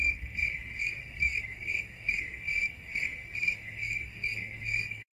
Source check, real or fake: fake